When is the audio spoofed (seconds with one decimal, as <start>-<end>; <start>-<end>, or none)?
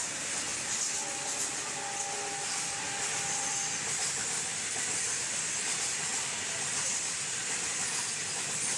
4.5-5.5; 6.1-8.8